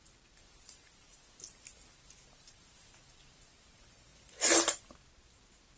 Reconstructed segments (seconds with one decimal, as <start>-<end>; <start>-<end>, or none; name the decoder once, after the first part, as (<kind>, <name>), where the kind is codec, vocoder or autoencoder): none